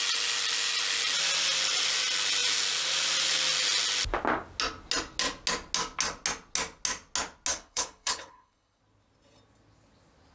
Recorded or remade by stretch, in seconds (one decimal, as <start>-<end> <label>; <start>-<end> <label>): 0.0-7.5 recorded; 7.5-8.8 remade; 8.8-10.3 recorded